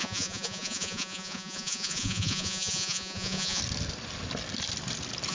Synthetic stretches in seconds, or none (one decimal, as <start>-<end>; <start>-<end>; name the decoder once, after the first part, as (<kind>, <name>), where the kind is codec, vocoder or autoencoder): 0.0-3.6 (vocoder, Vocos)